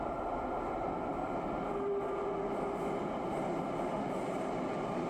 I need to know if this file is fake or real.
real